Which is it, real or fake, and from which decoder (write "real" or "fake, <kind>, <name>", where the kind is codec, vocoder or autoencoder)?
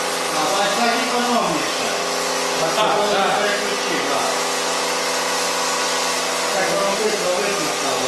real